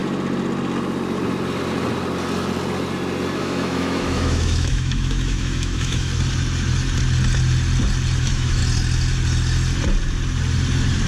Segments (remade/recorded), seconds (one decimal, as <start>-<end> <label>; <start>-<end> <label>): 0.0-3.4 recorded; 3.4-6.1 remade; 6.1-8.2 recorded; 8.2-8.6 remade; 8.6-11.1 recorded